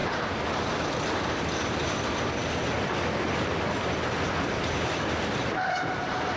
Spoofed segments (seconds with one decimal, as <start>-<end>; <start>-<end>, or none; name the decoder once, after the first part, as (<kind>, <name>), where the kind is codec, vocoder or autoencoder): 2.4-5.7 (vocoder, BigVGAN v2)